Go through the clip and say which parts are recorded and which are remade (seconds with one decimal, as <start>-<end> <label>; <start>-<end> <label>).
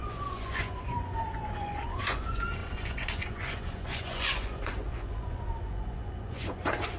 0.0-7.0 remade